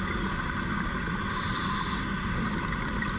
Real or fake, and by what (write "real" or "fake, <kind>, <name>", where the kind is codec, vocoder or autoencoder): real